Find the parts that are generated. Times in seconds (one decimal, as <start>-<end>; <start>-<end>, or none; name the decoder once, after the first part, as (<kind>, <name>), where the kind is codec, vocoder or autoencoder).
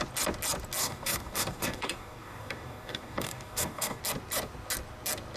0.8-4.0 (codec, DAC)